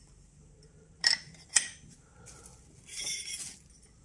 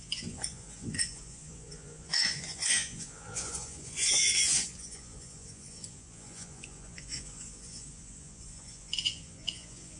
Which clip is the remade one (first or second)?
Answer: second